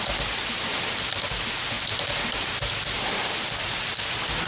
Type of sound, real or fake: real